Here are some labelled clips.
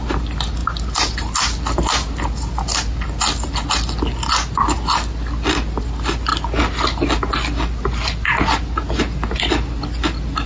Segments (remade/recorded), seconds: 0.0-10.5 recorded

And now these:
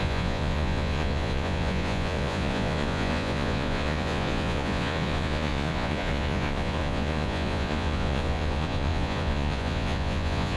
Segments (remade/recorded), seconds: 0.0-10.6 remade

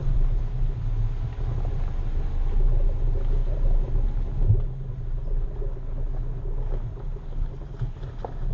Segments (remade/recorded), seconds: 0.0-1.0 remade; 1.0-8.5 recorded

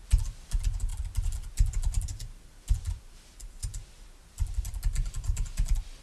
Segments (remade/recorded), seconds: 0.0-6.0 remade

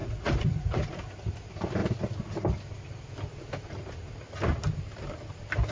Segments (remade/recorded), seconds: 0.0-0.9 remade; 0.9-5.7 recorded

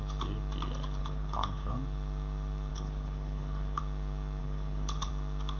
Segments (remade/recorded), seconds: 0.0-1.0 recorded; 1.0-1.7 remade; 1.7-2.7 recorded; 2.7-3.8 remade; 3.8-4.4 recorded; 4.4-5.1 remade; 5.1-5.6 recorded